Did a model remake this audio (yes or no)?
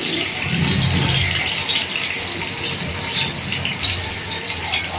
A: no